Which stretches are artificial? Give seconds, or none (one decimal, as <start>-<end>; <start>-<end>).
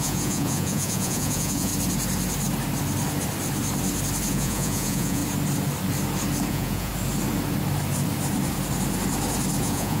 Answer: 0.0-1.7; 4.3-5.2; 6.5-6.9; 9.6-10.0